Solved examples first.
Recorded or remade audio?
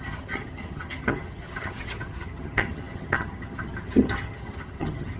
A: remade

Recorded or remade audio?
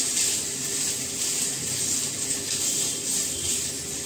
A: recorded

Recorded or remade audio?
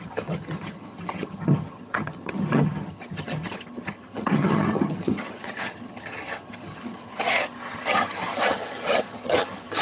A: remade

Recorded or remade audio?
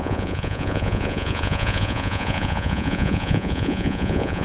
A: remade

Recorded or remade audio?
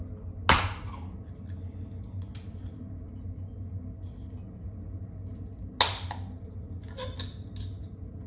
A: recorded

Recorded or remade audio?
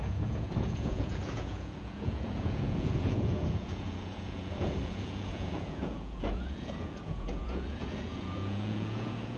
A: remade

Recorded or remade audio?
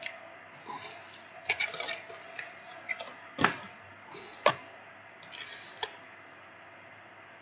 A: recorded